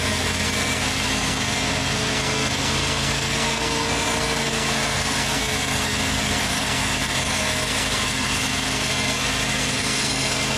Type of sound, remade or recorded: remade